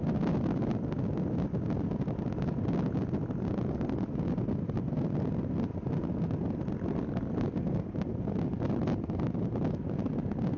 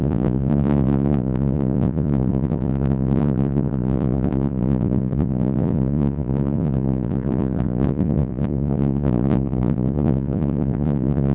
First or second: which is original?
first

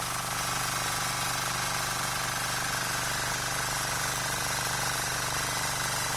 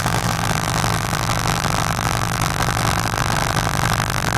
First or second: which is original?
first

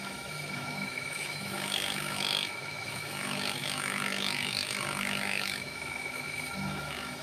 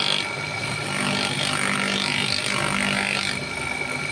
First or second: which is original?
second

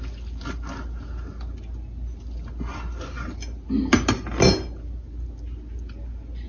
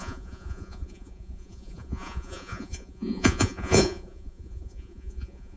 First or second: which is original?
first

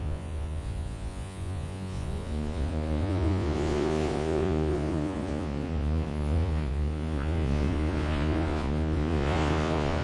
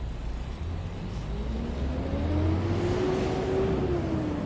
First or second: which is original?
second